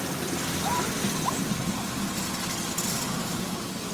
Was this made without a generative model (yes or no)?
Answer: yes